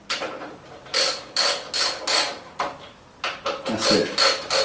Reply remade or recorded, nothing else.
recorded